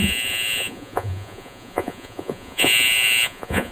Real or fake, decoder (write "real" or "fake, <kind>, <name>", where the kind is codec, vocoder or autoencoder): fake, vocoder, Vocos